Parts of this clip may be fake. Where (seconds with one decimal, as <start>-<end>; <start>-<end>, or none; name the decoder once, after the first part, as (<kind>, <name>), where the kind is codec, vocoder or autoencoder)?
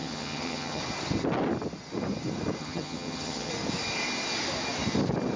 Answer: 0.0-0.8 (vocoder, HiFi-GAN); 2.6-3.5